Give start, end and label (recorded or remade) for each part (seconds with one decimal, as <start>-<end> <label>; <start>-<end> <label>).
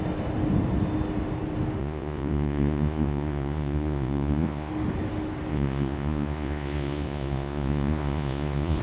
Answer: 0.0-1.8 recorded; 1.8-4.7 remade; 4.7-5.5 recorded; 5.5-8.8 remade